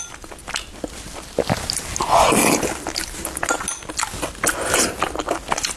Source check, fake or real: real